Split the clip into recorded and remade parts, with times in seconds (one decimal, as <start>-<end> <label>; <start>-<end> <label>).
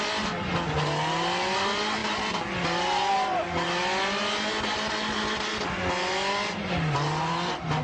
0.0-7.8 recorded